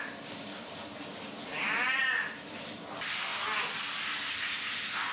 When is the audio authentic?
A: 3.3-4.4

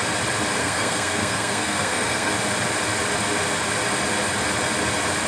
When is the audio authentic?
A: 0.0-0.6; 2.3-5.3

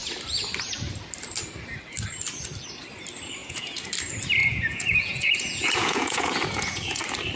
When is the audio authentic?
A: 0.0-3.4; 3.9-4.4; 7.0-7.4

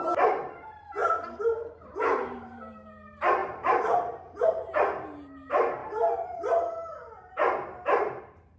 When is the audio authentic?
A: 0.0-1.0; 2.7-3.4; 4.7-8.6

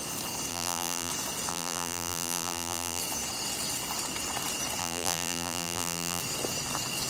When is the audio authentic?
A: 0.0-0.5; 1.1-1.5; 3.0-4.8; 6.2-7.1

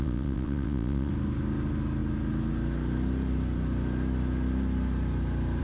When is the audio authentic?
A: 1.1-5.6